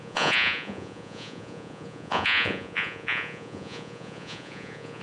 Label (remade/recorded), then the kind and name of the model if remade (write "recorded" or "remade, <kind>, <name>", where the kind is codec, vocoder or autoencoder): remade, vocoder, Vocos